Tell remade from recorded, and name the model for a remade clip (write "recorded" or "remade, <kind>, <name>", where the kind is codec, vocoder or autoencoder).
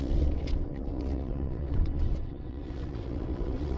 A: remade, vocoder, WaveNeXt